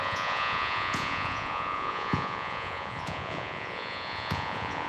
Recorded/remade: remade